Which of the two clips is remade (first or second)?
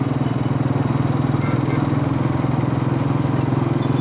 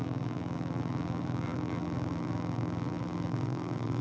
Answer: second